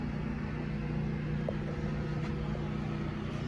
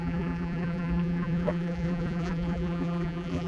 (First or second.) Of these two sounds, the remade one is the second